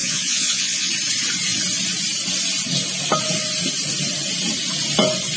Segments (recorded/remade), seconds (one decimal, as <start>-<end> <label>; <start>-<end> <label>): 0.0-0.9 remade; 0.9-5.4 recorded